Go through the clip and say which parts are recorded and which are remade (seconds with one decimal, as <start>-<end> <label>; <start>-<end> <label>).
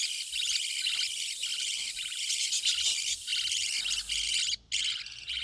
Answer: 0.0-1.5 recorded; 1.5-2.2 remade; 2.2-5.4 recorded